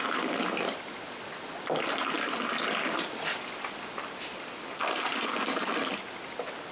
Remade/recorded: recorded